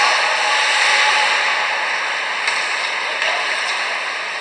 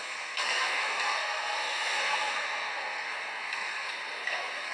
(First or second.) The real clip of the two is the first